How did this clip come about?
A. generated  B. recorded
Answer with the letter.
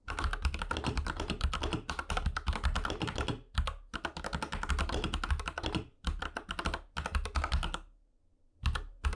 B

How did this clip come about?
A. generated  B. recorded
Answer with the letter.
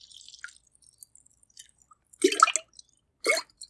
B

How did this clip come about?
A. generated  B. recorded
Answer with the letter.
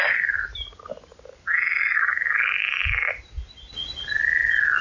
B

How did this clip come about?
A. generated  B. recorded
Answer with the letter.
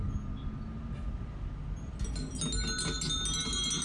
B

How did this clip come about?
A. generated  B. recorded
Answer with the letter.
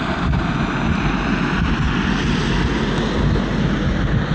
B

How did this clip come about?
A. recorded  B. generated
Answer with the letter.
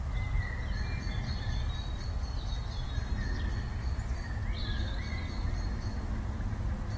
A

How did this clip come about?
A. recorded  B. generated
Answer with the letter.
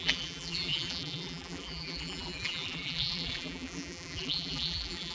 B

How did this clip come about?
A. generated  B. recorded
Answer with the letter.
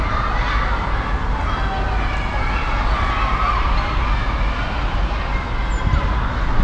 B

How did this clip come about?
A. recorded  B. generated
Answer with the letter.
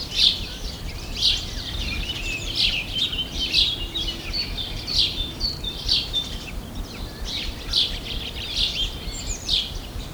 B